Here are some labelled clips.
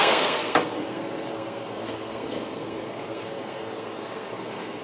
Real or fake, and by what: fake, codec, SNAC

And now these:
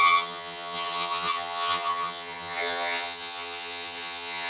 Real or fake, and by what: fake, vocoder, HiFi-GAN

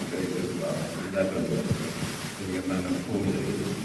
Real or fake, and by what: fake, vocoder, BigVGAN v2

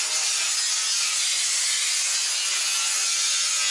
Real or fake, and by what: real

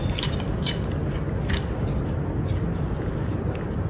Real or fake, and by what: real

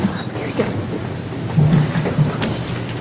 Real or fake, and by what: real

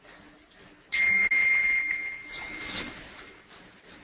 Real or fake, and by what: real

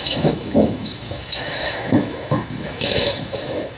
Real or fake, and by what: fake, autoencoder, DAC-VAE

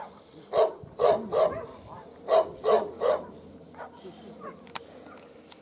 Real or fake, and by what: real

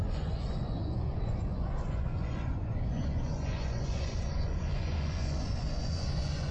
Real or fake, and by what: fake, vocoder, Vocos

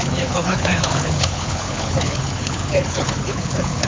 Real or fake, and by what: fake, codec, HILCodec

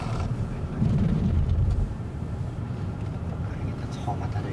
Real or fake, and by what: fake, vocoder, BigVGAN v2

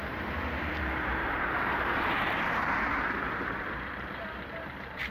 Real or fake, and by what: fake, vocoder, BigVGAN v2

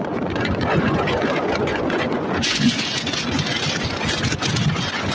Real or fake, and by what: fake, vocoder, Vocos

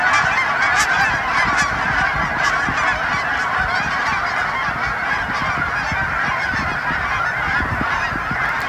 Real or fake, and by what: real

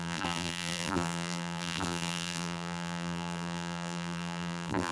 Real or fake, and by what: fake, vocoder, BigVGAN v2